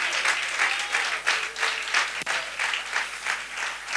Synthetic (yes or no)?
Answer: no